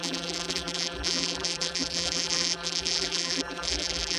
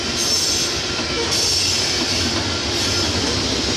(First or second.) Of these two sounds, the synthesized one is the first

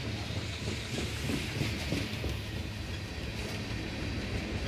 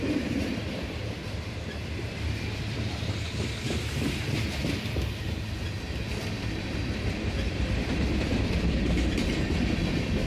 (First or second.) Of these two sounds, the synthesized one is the second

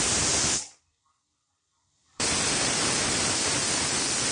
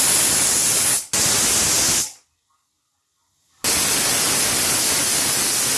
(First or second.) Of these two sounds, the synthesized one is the first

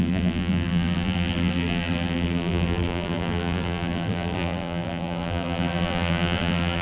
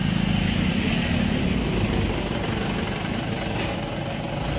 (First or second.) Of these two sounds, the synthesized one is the first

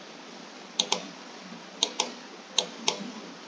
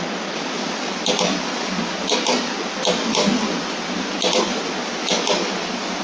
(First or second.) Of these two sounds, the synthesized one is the first